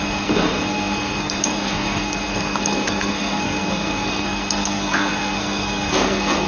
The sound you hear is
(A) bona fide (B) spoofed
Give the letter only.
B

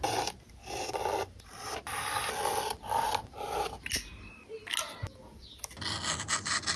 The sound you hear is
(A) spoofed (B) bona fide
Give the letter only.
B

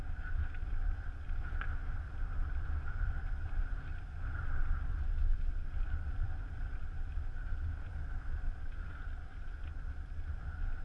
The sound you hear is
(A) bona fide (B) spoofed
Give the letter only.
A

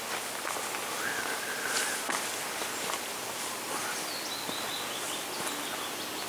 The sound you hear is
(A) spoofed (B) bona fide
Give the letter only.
B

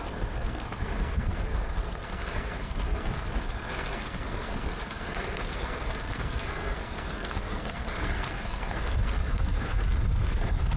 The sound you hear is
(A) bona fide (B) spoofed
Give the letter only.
B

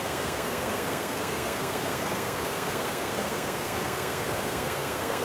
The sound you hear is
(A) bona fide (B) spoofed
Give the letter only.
B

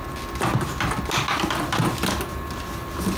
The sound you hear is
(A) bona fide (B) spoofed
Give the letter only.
A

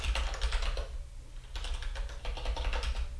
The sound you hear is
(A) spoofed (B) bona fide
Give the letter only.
B